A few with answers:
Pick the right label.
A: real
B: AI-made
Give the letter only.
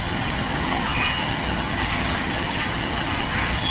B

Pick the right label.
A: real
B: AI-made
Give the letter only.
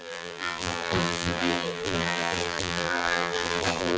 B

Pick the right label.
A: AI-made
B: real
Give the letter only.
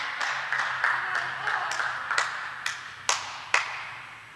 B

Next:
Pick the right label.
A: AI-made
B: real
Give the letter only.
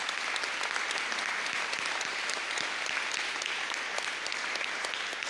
B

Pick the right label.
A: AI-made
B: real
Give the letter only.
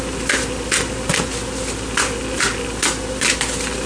B